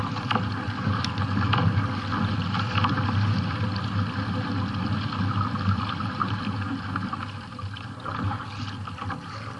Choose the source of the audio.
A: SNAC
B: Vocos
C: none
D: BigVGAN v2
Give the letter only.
C